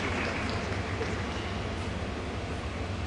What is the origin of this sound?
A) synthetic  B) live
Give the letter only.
B